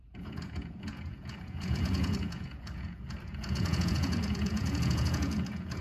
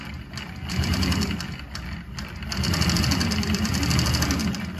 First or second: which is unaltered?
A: second